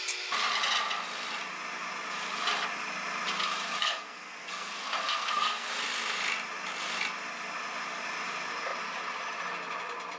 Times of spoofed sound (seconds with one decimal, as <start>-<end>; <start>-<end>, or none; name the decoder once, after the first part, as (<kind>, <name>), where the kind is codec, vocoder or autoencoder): 3.8-5.7 (codec, SNAC)